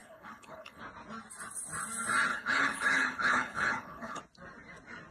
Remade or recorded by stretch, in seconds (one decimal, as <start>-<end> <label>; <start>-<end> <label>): 0.0-0.8 remade; 0.8-2.3 recorded; 2.3-4.2 remade; 4.2-5.1 recorded

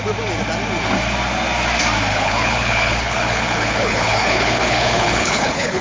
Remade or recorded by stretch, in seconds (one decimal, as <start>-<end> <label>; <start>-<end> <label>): 0.0-2.1 recorded; 2.1-5.8 remade